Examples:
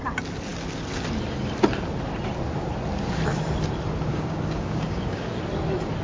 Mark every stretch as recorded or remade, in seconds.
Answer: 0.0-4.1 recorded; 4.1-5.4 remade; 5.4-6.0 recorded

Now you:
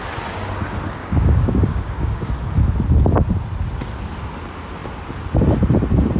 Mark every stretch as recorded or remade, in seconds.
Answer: 0.0-1.0 recorded; 1.0-2.3 remade; 2.3-6.2 recorded

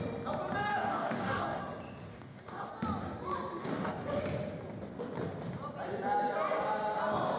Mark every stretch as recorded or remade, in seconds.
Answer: 0.0-0.7 recorded; 0.7-1.6 remade; 1.6-2.1 recorded; 2.1-2.7 remade; 2.7-3.6 recorded; 3.6-4.2 remade; 4.2-7.4 recorded

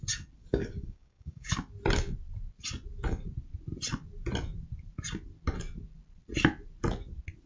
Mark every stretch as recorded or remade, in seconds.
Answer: 0.0-0.4 recorded; 0.4-1.5 remade; 1.5-7.5 recorded

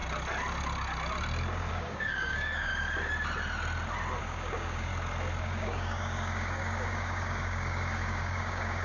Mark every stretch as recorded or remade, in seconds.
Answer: 0.0-1.7 recorded; 1.7-2.7 remade; 2.7-4.2 recorded; 4.2-4.9 remade; 4.9-5.4 recorded; 5.4-8.8 remade

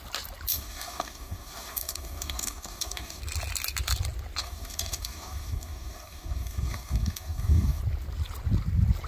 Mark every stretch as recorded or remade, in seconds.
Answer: 0.0-0.5 recorded; 0.5-3.2 remade; 3.2-4.4 recorded; 4.4-7.8 remade; 7.8-9.1 recorded

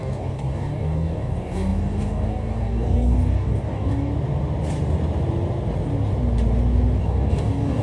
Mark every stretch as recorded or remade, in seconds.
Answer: 0.0-4.1 remade; 4.1-7.0 recorded; 7.0-7.8 remade

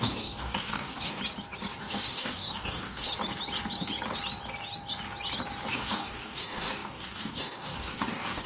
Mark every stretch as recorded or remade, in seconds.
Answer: 0.0-1.2 remade; 1.2-1.8 recorded; 1.8-3.1 remade; 3.1-5.7 recorded; 5.7-8.5 remade